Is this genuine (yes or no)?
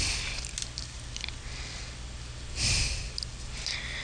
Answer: yes